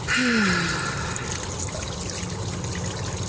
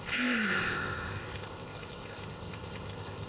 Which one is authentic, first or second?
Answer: first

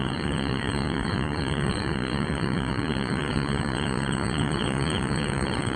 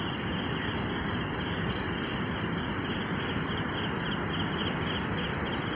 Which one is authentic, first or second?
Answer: second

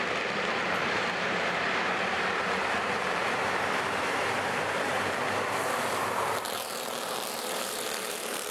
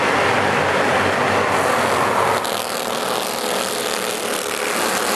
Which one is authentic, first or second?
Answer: second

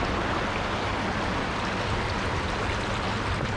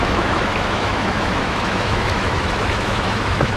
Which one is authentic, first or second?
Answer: first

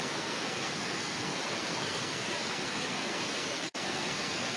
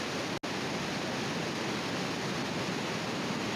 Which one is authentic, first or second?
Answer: second